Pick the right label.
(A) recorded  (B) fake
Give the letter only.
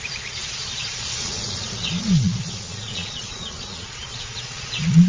B